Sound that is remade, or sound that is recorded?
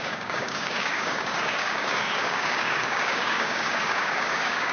remade